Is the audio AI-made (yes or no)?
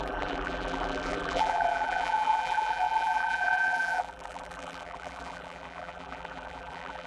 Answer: yes